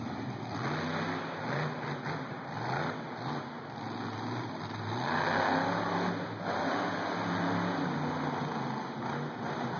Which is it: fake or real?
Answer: real